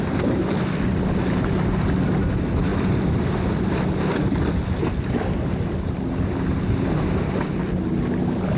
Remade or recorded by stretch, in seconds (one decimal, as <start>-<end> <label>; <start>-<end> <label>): 0.0-8.6 recorded